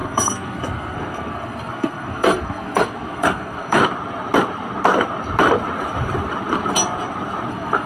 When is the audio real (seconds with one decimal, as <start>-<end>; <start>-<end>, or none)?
3.8-7.5